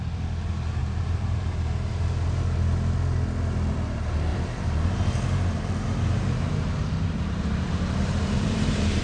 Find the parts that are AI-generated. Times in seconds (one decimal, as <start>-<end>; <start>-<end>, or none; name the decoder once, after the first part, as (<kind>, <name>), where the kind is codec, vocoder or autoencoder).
0.8-1.9 (vocoder, BigVGAN v2); 4.3-9.0